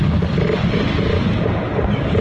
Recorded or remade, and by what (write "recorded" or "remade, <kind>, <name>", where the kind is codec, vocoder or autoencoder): recorded